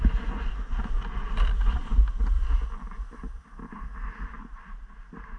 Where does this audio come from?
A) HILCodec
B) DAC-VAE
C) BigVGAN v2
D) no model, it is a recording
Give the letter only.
D